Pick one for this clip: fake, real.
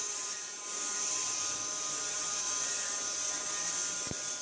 real